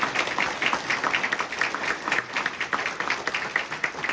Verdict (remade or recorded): recorded